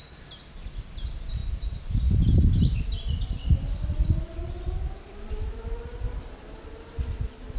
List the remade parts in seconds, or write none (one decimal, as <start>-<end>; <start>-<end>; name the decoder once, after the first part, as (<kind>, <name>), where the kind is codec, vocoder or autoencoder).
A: 1.4-5.8 (vocoder, BigVGAN v2)